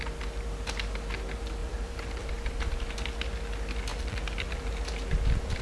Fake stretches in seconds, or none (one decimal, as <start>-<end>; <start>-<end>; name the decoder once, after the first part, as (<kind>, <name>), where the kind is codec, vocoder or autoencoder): 1.6-2.3 (vocoder, BigVGAN v2); 3.9-4.6